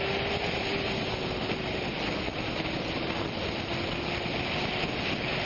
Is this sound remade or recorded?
recorded